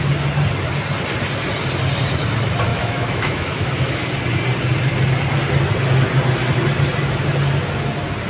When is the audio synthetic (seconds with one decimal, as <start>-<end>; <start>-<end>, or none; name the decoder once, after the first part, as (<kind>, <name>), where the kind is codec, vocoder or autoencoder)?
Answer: 2.7-4.1 (autoencoder, DAC-VAE)